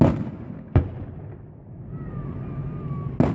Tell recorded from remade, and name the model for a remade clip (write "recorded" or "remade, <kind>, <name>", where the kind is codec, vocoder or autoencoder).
recorded